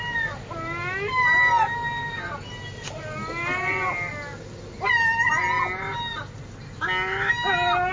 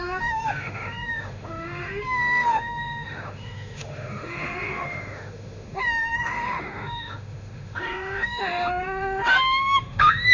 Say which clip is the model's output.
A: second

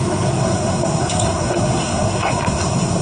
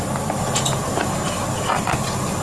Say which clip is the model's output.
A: first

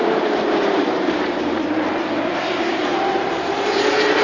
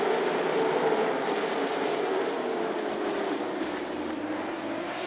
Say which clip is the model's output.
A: first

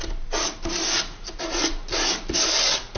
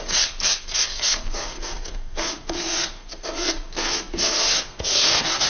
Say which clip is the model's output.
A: second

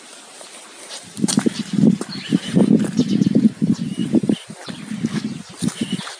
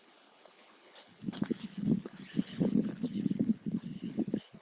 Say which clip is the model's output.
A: second